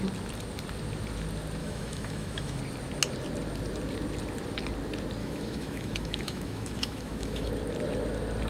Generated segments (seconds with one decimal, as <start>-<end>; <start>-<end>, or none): 1.6-2.6; 5.2-7.5